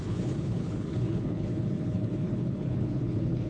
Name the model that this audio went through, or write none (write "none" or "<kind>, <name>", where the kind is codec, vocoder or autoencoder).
codec, HILCodec